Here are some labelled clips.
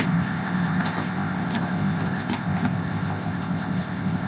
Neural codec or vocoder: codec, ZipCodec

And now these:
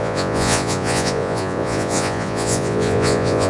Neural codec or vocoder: vocoder, Vocos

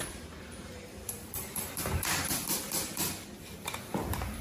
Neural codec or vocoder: vocoder, BigVGAN v2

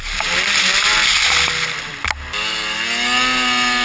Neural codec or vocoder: none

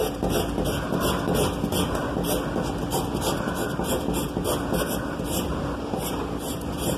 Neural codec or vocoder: none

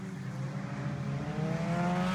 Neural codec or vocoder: none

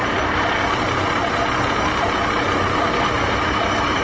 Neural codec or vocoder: none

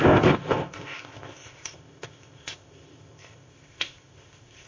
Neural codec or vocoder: codec, ZipCodec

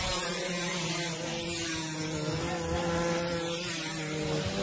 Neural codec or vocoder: none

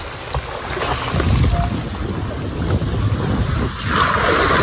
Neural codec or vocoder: none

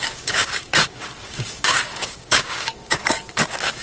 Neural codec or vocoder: codec, DAC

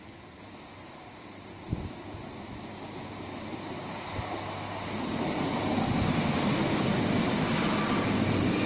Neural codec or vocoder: none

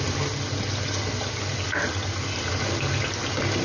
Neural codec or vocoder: none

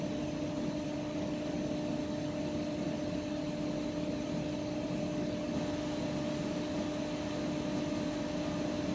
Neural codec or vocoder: none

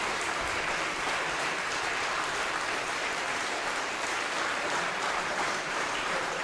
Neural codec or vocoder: vocoder, BigVGAN v2